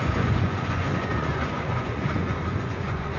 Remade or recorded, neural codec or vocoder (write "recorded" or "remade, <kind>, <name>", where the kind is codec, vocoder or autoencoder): remade, vocoder, Vocos